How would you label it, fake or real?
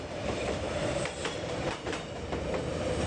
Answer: fake